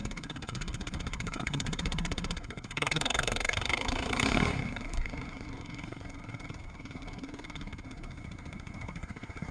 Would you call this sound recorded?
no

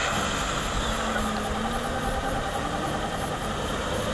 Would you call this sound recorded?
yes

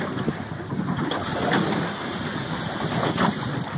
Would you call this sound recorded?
yes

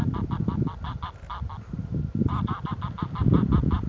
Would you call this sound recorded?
yes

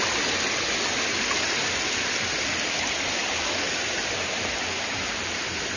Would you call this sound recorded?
yes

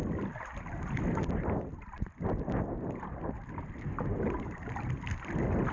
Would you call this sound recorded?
yes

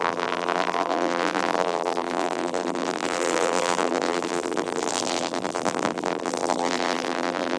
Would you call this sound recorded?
no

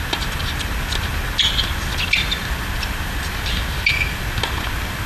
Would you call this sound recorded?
yes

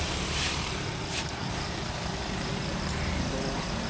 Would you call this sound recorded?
no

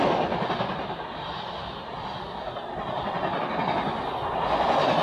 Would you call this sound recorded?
yes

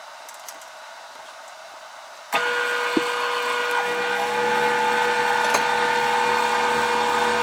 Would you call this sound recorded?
yes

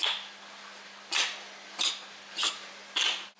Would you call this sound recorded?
yes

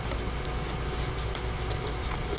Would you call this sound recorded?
yes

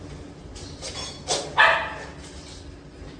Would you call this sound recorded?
yes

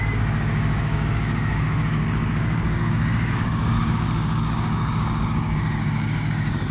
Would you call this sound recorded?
no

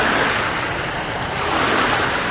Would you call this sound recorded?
yes